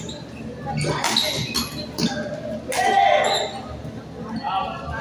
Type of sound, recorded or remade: recorded